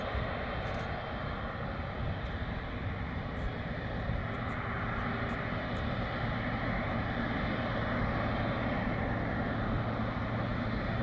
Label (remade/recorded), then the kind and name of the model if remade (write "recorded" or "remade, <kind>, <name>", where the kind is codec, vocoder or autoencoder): recorded